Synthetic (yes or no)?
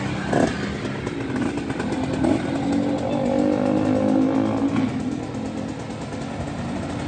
no